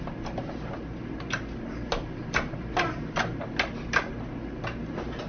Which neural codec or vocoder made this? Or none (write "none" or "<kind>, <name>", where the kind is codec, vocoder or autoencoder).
none